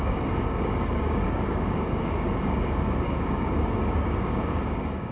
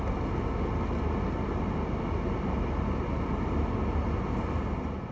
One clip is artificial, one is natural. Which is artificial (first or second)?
first